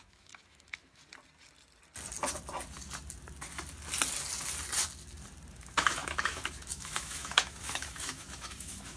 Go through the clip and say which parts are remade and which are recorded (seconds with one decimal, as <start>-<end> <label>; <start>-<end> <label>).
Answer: 0.0-1.0 remade; 1.0-5.5 recorded; 5.5-9.0 remade